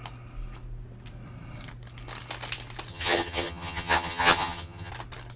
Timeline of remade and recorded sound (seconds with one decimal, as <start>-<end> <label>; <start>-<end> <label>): 0.0-2.9 recorded; 2.9-4.9 remade; 4.9-5.4 recorded